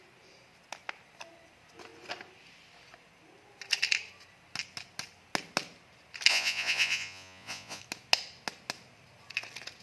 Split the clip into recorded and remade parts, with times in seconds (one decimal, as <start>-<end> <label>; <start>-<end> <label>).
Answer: 0.0-6.3 recorded; 6.3-7.8 remade; 7.8-9.8 recorded